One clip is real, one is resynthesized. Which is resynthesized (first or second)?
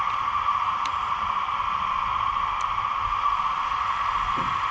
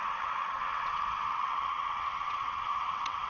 second